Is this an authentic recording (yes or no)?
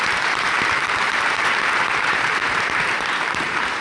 no